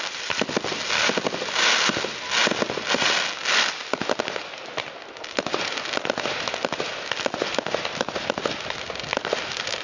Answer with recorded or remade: recorded